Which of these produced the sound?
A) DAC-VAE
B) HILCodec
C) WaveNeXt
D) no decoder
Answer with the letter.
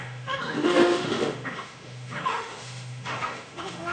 A